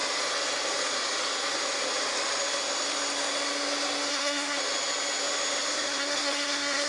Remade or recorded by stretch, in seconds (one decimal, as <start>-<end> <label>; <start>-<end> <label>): 0.0-4.1 recorded; 4.1-4.6 remade; 4.6-5.7 recorded; 5.7-6.9 remade